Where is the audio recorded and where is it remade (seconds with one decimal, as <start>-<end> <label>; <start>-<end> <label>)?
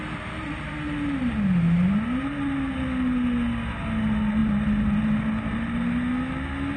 0.0-6.8 recorded